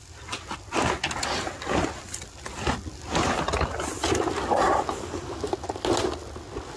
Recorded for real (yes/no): yes